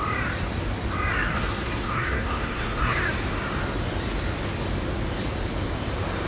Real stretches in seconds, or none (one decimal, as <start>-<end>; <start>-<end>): 0.0-1.3; 3.0-6.3